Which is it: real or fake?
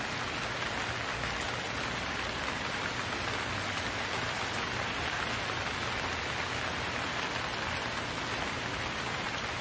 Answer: real